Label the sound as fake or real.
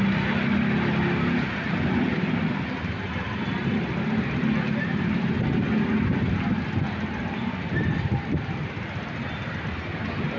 real